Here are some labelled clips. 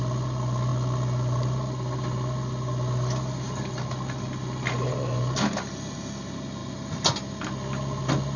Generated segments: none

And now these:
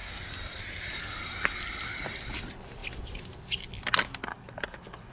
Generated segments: 4.3-5.1 (codec, DAC)